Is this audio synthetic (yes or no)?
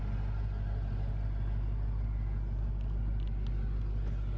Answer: no